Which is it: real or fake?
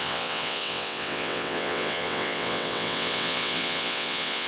fake